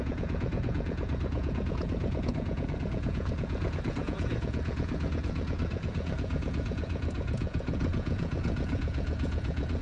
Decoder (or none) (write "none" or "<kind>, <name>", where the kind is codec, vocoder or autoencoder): vocoder, Vocos